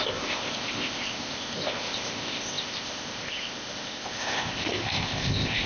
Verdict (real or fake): fake